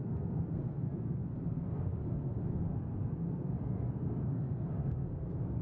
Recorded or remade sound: remade